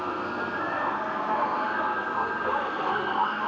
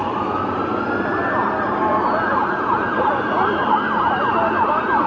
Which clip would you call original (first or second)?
second